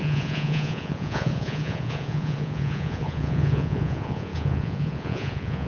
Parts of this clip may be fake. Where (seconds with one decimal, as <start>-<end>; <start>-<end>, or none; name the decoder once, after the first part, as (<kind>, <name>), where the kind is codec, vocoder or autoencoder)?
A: 0.0-5.7 (vocoder, Vocos)